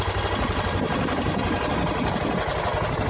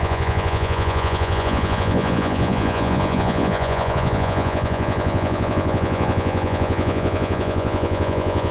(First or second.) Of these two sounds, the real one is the first